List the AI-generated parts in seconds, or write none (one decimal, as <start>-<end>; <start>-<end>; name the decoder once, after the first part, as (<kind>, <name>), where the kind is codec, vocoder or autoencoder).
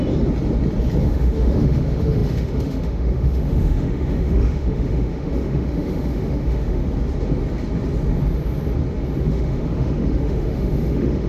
1.0-6.8 (autoencoder, DAC-VAE); 9.2-11.3